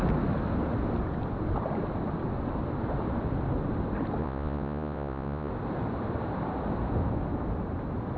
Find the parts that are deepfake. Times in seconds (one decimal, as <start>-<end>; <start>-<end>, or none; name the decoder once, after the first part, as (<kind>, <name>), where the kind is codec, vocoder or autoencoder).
4.2-5.5 (vocoder, Vocos)